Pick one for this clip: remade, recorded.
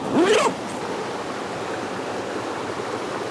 recorded